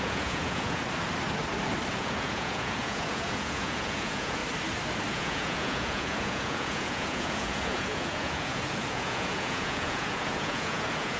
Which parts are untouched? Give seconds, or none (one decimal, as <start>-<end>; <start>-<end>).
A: 0.8-1.9; 4.4-5.1